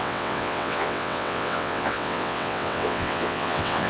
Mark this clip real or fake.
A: fake